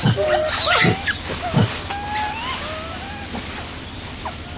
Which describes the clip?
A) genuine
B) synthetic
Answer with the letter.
A